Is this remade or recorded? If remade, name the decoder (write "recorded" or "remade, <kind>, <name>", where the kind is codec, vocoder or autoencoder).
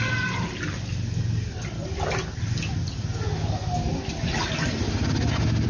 recorded